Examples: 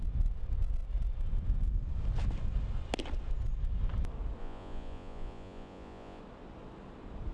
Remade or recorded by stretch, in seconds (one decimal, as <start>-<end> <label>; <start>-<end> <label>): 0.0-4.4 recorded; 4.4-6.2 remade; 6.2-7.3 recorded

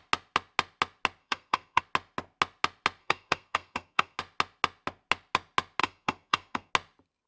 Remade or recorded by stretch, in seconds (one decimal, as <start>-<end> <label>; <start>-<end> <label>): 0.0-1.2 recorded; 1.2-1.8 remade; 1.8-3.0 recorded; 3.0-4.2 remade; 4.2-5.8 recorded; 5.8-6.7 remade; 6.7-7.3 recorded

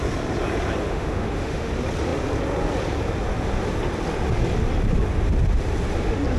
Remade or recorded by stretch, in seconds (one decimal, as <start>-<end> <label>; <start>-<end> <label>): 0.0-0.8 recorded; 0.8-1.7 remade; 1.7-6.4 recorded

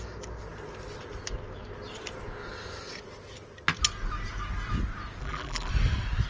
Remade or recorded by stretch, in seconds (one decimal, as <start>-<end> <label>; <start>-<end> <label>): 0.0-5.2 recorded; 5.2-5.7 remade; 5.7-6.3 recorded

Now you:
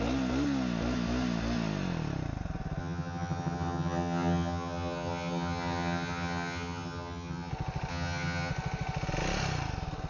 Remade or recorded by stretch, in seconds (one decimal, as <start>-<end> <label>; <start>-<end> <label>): 0.0-2.8 recorded; 2.8-7.5 remade; 7.5-7.9 recorded; 7.9-8.5 remade; 8.5-10.1 recorded

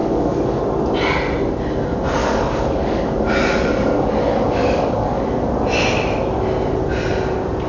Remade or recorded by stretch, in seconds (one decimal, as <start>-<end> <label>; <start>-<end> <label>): 0.0-0.6 remade; 0.6-2.2 recorded; 2.2-5.2 remade; 5.2-7.7 recorded

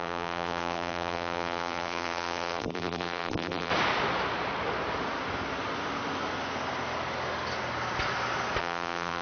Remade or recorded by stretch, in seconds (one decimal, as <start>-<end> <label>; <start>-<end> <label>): 0.0-3.7 remade; 3.7-8.6 recorded; 8.6-9.2 remade

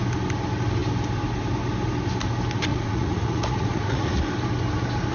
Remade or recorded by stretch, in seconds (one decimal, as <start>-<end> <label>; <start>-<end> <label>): 0.0-2.7 recorded; 2.7-4.2 remade; 4.2-5.1 recorded